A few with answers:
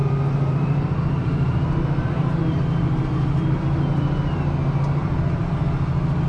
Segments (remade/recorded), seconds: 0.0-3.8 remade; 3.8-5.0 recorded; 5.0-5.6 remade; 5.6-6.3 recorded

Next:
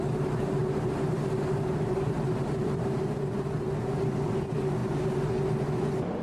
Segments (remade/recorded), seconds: 0.0-0.6 recorded; 0.6-4.3 remade; 4.3-6.2 recorded